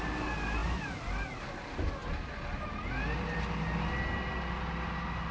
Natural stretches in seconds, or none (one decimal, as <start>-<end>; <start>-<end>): 0.0-5.3